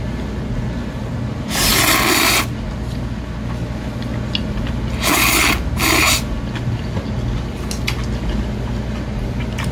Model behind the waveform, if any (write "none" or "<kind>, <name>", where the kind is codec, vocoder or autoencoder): none